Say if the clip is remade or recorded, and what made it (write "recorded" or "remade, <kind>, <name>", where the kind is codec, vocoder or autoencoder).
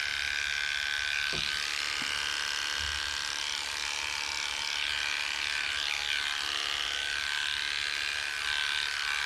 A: recorded